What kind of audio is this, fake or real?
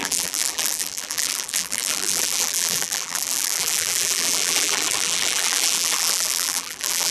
fake